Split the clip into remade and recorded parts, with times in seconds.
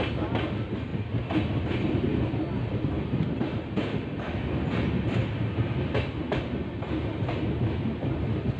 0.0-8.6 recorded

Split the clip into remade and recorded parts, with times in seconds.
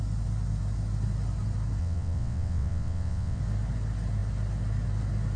0.0-1.8 recorded; 1.8-3.4 remade; 3.4-5.4 recorded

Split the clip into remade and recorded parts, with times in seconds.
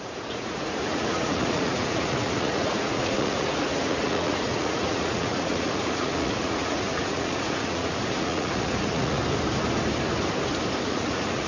0.0-9.2 remade; 9.2-10.8 recorded; 10.8-11.5 remade